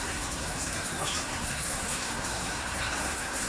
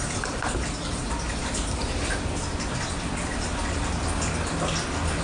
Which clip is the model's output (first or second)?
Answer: first